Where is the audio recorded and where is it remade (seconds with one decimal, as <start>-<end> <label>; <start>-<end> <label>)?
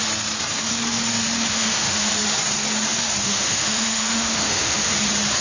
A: 0.0-1.5 recorded; 1.5-2.1 remade; 2.1-3.2 recorded; 3.2-4.9 remade; 4.9-5.4 recorded